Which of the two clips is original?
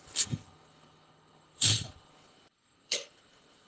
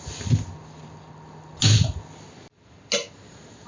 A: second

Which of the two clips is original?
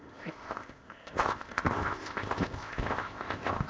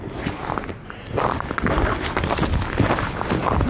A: second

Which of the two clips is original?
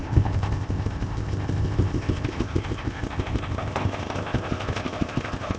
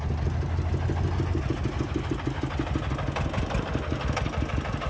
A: second